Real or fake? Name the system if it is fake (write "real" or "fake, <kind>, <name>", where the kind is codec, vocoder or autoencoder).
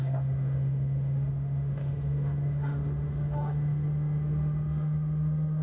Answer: fake, autoencoder, DAC-VAE